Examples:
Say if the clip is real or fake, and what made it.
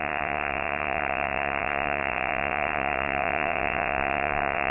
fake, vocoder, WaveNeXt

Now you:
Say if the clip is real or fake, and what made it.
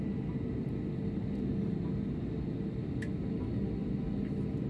real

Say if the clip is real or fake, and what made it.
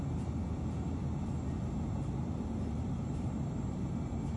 real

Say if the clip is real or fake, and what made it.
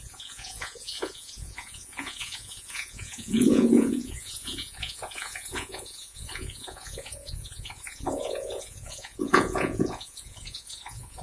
fake, vocoder, Vocos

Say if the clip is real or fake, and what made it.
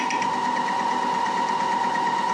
real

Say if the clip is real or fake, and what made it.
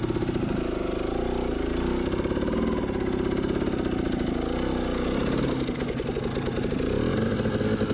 real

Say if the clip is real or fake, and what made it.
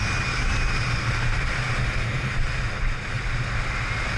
real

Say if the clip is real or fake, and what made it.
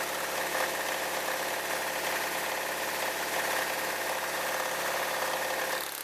real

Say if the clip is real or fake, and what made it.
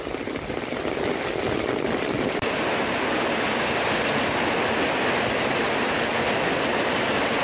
real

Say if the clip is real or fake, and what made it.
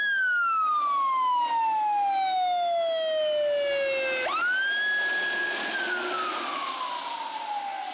real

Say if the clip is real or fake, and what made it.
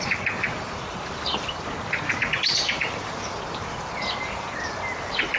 fake, vocoder, BigVGAN v2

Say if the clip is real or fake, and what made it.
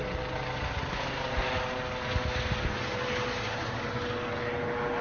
real